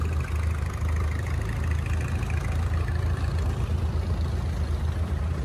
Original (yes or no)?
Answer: yes